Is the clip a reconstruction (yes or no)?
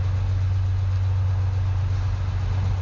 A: no